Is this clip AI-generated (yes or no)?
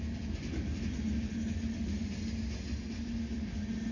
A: no